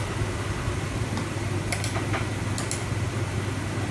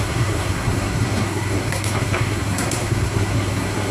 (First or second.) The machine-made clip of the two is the second